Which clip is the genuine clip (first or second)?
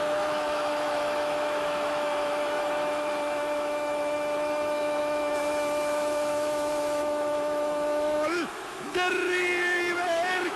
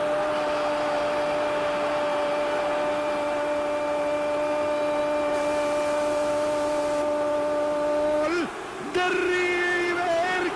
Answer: second